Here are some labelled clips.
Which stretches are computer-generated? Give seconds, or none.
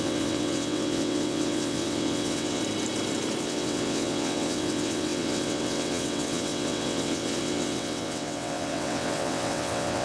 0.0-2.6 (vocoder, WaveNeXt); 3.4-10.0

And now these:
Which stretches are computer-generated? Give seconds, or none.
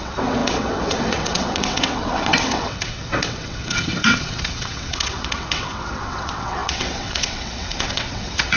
0.0-8.6 (vocoder, WaveNeXt)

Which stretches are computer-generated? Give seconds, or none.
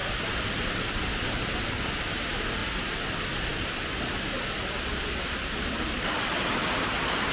none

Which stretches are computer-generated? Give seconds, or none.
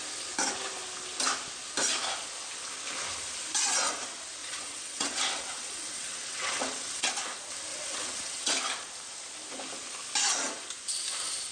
4.4-7.1 (vocoder, WaveNeXt); 7.7-8.5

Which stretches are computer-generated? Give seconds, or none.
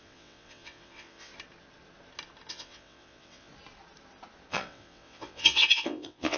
0.0-1.3 (vocoder, WaveNeXt); 2.5-3.5; 4.5-6.4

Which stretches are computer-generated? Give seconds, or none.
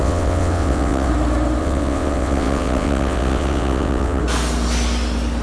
0.0-1.1 (vocoder, WaveNeXt); 1.6-4.2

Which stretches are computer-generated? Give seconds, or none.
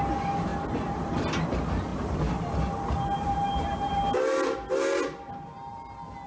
none